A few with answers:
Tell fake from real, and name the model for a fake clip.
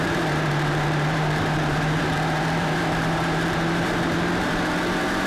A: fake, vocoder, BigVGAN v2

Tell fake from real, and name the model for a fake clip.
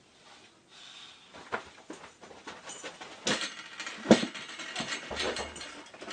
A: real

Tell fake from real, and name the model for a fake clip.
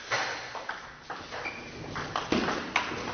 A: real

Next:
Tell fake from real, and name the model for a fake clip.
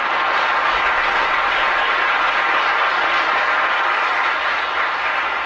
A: real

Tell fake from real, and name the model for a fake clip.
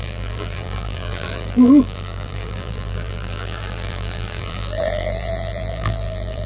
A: fake, vocoder, BigVGAN v2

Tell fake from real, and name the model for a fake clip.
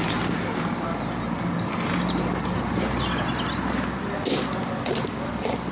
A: real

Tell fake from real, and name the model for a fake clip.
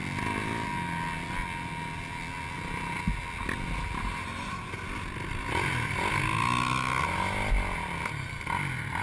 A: real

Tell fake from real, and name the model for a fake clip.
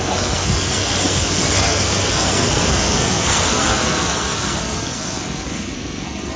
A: fake, codec, SNAC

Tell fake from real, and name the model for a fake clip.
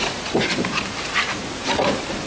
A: real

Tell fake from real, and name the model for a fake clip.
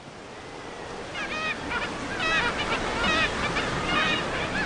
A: real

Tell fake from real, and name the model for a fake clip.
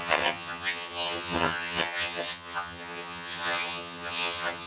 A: fake, vocoder, HiFi-GAN